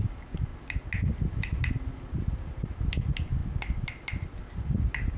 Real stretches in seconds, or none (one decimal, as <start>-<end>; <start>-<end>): 0.0-5.2